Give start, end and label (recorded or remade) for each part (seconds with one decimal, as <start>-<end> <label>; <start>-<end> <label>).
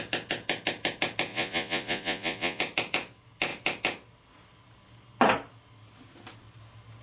0.0-1.3 recorded; 1.3-2.6 remade; 2.6-7.0 recorded